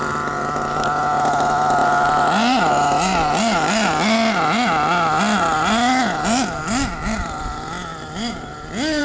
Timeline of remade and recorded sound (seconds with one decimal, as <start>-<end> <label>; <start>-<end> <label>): 0.0-9.0 recorded